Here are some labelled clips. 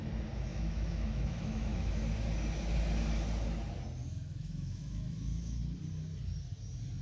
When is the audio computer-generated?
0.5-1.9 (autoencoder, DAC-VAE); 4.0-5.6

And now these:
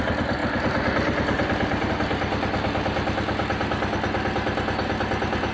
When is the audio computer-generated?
0.4-1.9 (vocoder, BigVGAN v2)

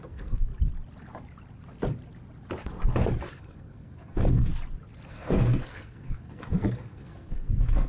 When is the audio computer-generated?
0.0-0.5 (codec, SNAC); 3.3-4.5; 5.1-7.9

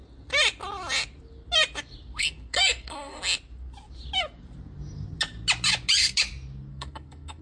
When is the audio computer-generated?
2.2-3.2 (codec, SNAC); 6.7-7.4

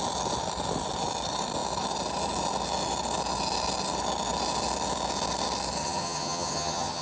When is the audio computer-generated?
5.8-7.0 (vocoder, HiFi-GAN)

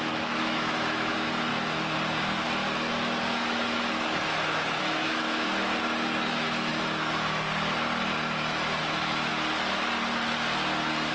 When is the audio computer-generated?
0.0-1.5 (autoencoder, DAC-VAE); 2.9-5.7; 6.3-6.7; 8.8-9.3

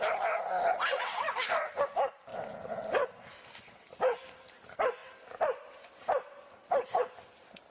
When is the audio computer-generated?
0.7-1.3 (vocoder, WaveNeXt)

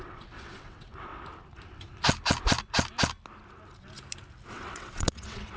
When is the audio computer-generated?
0.0-1.1 (vocoder, WaveNeXt); 4.5-5.6